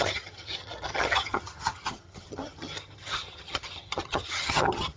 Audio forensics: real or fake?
fake